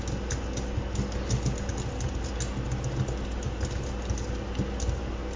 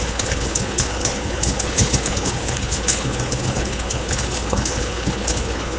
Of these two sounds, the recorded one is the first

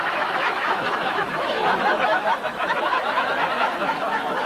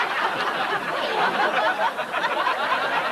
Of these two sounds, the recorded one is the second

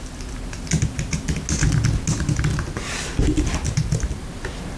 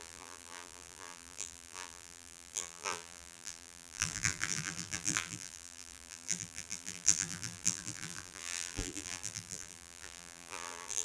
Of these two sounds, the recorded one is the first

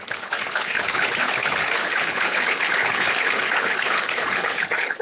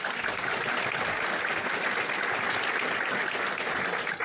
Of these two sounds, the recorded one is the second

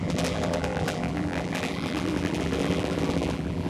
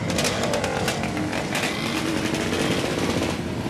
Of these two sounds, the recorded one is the second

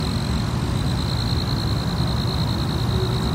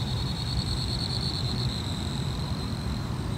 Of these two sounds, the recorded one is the first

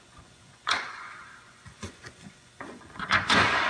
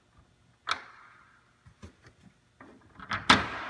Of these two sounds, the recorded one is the second